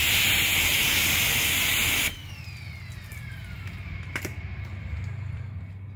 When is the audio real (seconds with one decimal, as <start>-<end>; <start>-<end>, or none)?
0.0-0.7; 1.2-3.1; 4.9-6.0